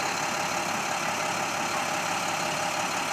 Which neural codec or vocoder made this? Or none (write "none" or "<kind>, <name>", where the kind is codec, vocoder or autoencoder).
none